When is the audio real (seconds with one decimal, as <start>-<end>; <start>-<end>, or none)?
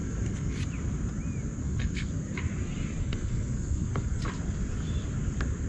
0.6-1.6; 2.1-3.0; 4.2-5.7